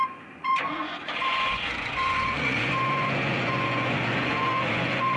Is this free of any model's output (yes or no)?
no